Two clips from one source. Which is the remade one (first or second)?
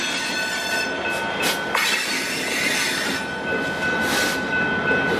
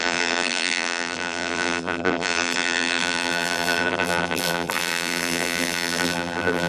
second